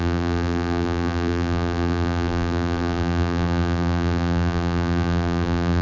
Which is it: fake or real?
fake